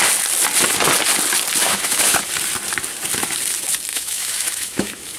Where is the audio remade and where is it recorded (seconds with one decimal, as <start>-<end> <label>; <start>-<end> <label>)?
0.0-1.6 recorded; 1.6-2.3 remade; 2.3-3.9 recorded; 3.9-5.2 remade